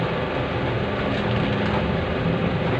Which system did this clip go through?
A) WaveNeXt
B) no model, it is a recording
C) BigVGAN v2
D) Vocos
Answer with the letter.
B